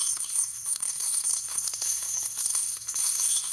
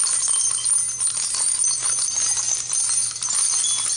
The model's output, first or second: first